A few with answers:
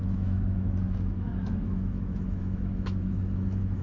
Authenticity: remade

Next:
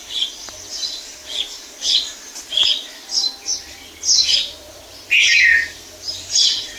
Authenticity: recorded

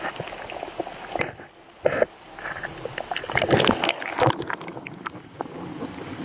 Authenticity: recorded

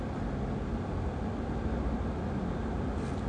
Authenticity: recorded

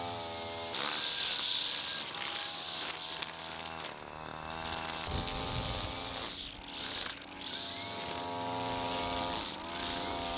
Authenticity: recorded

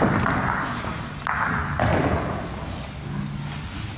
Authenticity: recorded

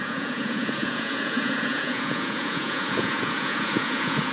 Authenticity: remade